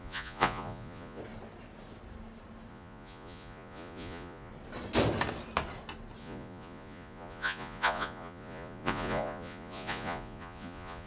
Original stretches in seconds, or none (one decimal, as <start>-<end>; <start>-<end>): 1.2-2.7; 4.5-6.2